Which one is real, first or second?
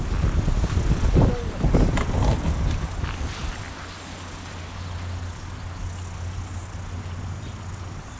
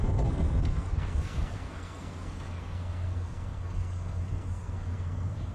first